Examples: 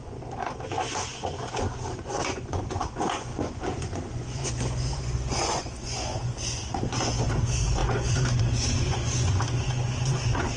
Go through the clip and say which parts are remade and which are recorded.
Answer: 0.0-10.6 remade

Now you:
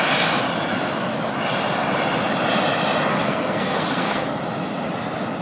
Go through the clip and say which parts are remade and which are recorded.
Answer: 0.0-3.1 recorded; 3.1-4.4 remade; 4.4-5.4 recorded

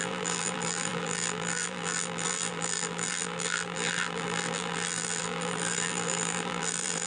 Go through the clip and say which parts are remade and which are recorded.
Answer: 0.0-7.1 remade

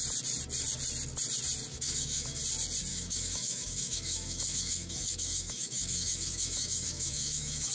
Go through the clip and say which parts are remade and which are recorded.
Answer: 0.0-1.7 recorded; 1.7-2.4 remade; 2.4-2.9 recorded; 2.9-7.7 remade

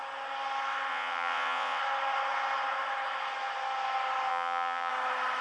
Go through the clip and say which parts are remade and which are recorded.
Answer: 0.0-0.9 recorded; 0.9-1.8 remade; 1.8-4.3 recorded; 4.3-4.9 remade; 4.9-5.4 recorded

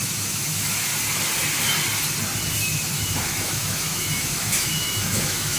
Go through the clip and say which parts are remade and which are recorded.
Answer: 0.0-0.9 remade; 0.9-2.9 recorded; 2.9-5.6 remade

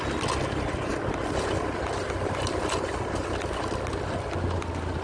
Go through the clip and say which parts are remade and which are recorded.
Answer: 0.0-5.0 recorded

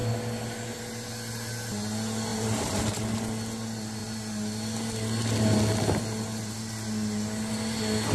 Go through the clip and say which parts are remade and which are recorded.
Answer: 0.0-2.3 recorded; 2.3-3.0 remade; 3.0-8.1 recorded